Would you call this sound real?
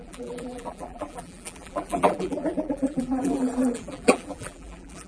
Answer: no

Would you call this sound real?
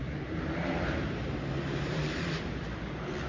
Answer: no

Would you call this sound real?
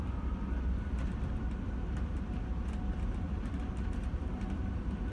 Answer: yes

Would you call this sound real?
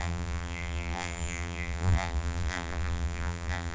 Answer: no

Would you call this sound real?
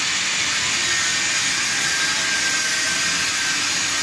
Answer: yes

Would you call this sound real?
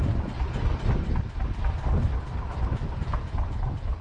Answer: yes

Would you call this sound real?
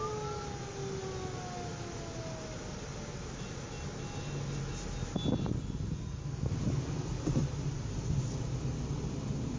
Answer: yes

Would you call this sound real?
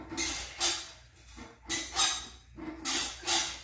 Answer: yes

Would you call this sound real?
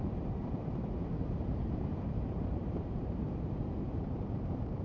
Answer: no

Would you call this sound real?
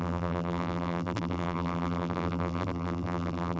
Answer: no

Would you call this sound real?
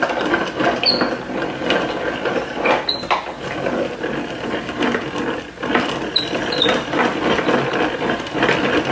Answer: yes